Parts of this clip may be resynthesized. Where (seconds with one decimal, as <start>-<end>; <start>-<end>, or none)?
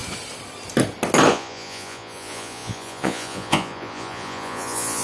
1.3-5.0